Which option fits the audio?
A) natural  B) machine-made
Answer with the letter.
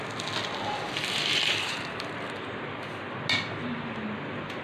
A